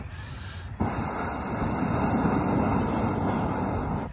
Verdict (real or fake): real